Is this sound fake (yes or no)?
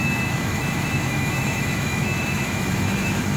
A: yes